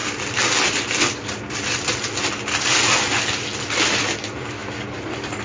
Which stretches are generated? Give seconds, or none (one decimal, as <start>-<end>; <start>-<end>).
none